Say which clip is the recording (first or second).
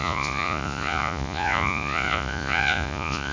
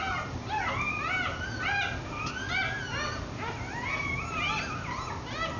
second